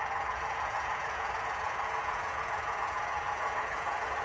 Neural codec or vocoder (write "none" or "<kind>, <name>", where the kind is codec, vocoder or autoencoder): vocoder, Vocos